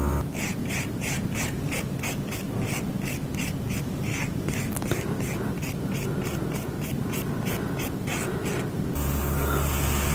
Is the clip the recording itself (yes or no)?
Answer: yes